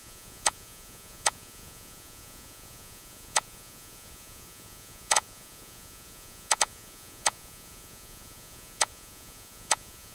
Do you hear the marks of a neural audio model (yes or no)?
yes